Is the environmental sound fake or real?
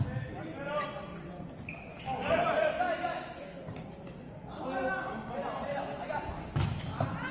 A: real